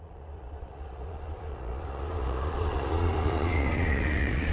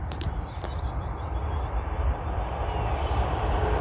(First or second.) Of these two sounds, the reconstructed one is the first